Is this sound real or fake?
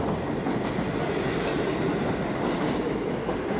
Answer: real